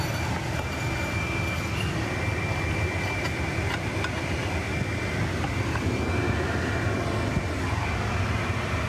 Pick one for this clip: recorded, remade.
recorded